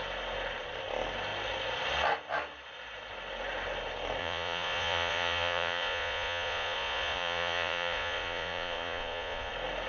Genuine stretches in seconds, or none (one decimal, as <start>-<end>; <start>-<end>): 0.0-4.2; 9.5-9.9

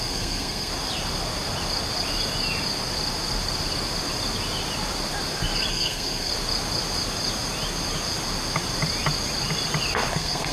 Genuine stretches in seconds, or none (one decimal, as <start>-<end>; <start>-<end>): 0.7-5.7; 6.3-10.1